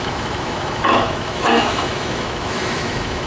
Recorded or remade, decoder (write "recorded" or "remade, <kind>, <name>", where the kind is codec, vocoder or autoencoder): remade, autoencoder, DAC-VAE